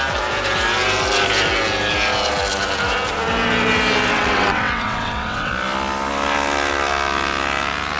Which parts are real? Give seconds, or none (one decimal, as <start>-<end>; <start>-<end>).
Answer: 0.0-4.1; 5.5-8.0